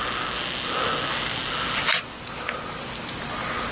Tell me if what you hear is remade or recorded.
recorded